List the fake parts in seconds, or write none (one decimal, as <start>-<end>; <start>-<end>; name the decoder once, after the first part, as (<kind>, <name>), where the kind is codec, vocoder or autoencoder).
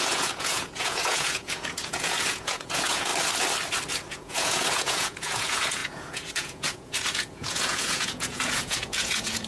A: 0.0-3.1 (vocoder, Vocos); 4.1-9.5